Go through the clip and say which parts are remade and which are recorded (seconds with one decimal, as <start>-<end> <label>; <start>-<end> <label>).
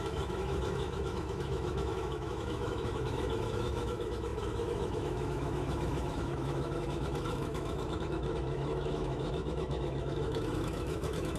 0.0-11.4 remade